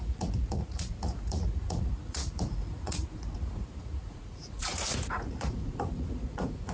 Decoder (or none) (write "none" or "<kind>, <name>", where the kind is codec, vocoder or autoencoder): vocoder, Vocos